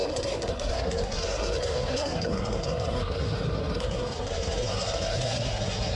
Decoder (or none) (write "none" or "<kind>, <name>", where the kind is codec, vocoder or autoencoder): codec, SNAC